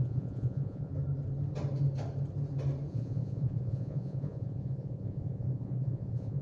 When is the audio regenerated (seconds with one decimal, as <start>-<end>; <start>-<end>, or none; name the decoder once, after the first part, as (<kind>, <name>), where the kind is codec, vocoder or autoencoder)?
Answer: 0.0-0.9 (vocoder, Vocos); 2.9-6.4